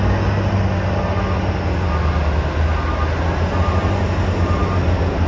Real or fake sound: real